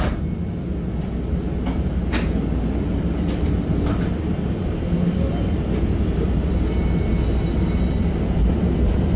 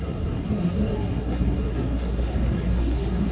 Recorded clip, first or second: first